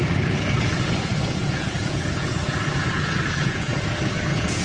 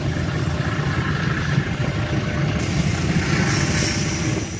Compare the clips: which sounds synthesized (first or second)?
first